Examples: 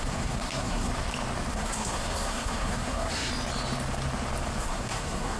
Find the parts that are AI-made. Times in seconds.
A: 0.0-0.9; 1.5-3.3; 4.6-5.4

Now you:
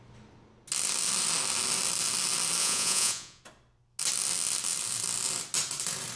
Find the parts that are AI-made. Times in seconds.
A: 2.6-3.4

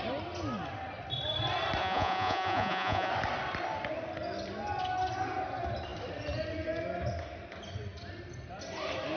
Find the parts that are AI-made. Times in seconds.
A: 1.8-3.1